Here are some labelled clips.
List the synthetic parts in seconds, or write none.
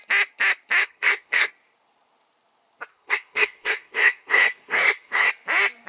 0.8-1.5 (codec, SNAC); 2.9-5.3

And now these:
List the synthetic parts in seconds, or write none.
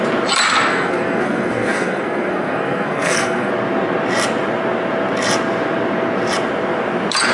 0.7-3.5 (codec, SNAC)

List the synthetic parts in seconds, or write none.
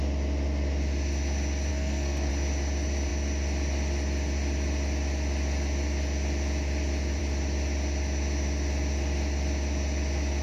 1.7-2.3 (codec, SNAC)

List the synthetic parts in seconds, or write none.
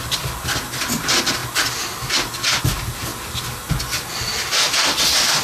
none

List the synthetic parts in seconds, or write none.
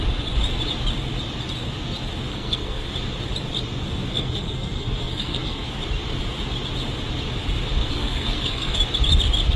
2.3-2.9 (codec, SNAC); 4.1-5.7; 7.8-8.8